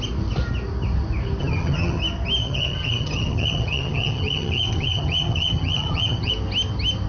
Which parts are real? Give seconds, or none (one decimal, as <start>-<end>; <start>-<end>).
0.0-1.4; 2.0-2.4; 6.3-7.1